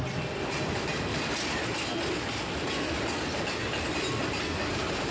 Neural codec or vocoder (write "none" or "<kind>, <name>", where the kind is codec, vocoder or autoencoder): none